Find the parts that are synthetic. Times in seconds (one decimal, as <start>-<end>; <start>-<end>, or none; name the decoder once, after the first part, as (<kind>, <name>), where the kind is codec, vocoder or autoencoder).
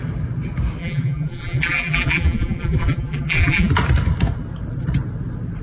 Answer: 0.8-3.7 (vocoder, BigVGAN v2)